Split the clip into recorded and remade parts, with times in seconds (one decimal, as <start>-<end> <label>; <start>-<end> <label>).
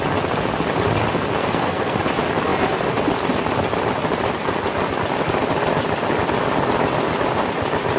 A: 0.0-1.4 recorded; 1.4-2.0 remade; 2.0-8.0 recorded